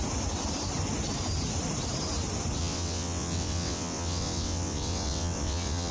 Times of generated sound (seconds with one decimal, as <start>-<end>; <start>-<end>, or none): 2.6-5.9